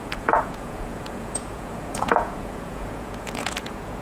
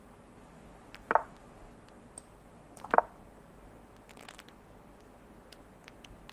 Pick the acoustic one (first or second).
second